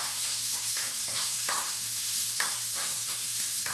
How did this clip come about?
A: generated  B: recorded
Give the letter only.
A